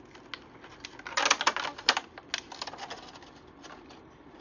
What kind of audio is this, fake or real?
real